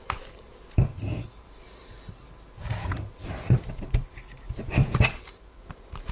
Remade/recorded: remade